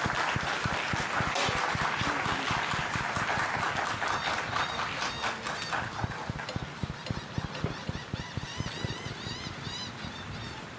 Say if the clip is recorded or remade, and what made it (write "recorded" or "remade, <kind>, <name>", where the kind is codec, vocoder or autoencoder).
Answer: remade, vocoder, BigVGAN v2